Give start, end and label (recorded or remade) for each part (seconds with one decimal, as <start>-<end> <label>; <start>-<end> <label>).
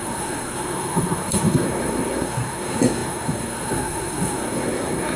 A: 0.0-5.2 remade